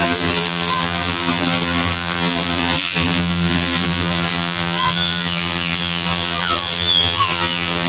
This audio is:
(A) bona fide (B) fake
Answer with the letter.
B